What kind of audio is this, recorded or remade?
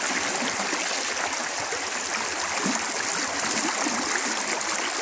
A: recorded